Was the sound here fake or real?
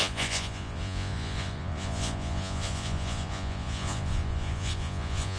fake